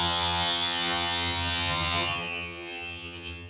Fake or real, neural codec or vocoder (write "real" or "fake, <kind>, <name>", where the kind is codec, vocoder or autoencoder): fake, vocoder, HiFi-GAN